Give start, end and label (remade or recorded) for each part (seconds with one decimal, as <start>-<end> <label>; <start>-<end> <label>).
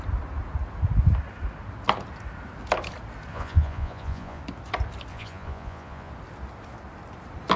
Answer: 0.0-3.3 recorded; 3.3-4.4 remade; 4.4-5.1 recorded; 5.1-6.1 remade; 6.1-7.6 recorded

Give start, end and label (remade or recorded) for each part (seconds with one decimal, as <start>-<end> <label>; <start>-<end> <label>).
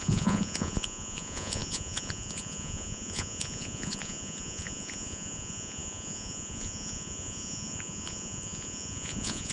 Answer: 0.0-9.5 remade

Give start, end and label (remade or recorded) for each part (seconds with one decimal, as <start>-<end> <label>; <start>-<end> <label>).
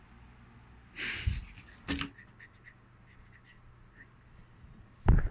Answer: 0.0-5.3 recorded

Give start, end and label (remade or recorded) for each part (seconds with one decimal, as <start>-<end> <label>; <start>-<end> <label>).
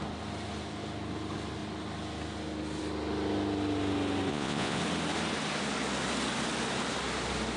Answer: 0.0-4.3 recorded; 4.3-4.8 remade; 4.8-7.6 recorded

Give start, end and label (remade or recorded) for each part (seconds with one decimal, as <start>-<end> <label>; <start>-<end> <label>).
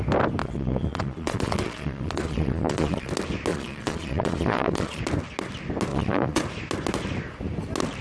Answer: 0.0-0.4 recorded; 0.4-3.1 remade; 3.1-3.5 recorded; 3.5-5.0 remade; 5.0-5.9 recorded; 5.9-6.4 remade; 6.4-8.0 recorded